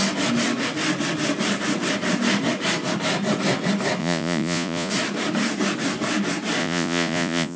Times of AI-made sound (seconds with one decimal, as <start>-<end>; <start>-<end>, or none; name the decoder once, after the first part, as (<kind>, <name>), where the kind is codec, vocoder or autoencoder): 4.0-4.9 (vocoder, Vocos); 6.6-7.6